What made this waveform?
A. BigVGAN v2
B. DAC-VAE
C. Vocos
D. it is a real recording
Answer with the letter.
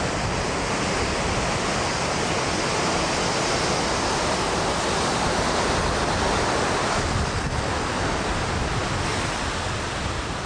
D